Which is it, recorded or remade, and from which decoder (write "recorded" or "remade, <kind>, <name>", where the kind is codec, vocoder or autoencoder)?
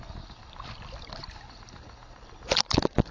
recorded